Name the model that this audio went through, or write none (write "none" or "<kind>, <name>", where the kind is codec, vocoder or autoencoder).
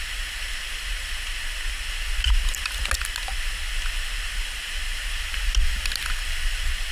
none